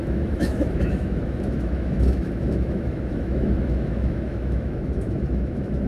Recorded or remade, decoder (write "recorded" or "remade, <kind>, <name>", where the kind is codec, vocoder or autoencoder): remade, autoencoder, DAC-VAE